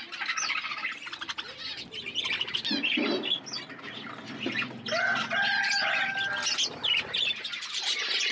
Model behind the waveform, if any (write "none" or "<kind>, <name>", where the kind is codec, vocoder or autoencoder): none